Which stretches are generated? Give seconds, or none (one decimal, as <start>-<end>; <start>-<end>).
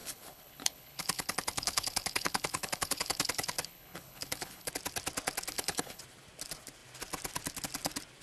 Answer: 0.0-4.7; 5.5-6.0